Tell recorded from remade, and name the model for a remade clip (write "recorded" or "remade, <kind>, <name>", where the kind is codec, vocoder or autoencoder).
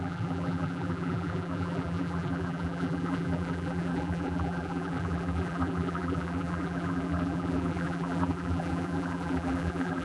remade, vocoder, BigVGAN v2